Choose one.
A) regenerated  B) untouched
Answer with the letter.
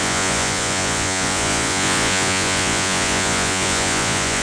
A